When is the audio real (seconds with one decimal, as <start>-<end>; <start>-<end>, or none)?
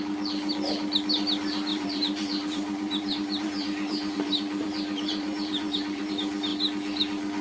0.0-1.7; 6.1-7.4